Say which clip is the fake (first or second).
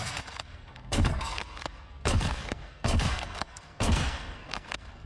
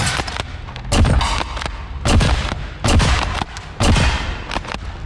first